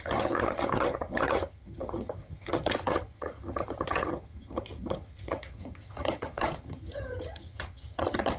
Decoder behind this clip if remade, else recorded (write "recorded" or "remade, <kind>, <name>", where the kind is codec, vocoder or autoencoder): remade, vocoder, HiFi-GAN